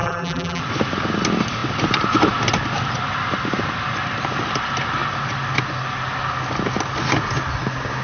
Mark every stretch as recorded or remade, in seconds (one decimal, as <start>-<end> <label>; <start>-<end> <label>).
0.0-0.6 remade; 0.6-8.0 recorded

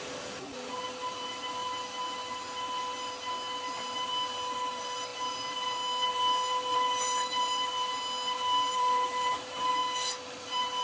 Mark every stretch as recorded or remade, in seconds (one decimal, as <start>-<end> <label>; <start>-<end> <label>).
0.0-1.6 remade; 1.6-3.6 recorded; 3.6-9.8 remade; 9.8-10.3 recorded; 10.3-10.8 remade

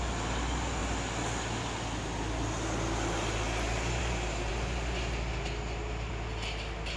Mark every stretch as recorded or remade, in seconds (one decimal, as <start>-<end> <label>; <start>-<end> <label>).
0.0-7.0 recorded

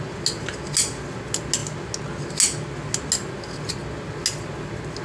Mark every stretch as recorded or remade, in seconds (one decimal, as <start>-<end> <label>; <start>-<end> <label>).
0.0-5.0 recorded

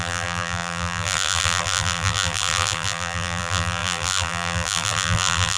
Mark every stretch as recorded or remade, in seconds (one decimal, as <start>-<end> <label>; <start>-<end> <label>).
0.0-5.6 remade